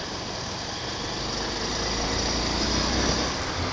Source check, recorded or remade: recorded